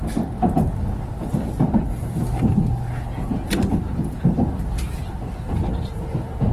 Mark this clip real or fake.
real